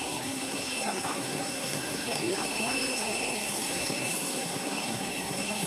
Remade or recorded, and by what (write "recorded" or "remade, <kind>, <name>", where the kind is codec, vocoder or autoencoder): remade, codec, SNAC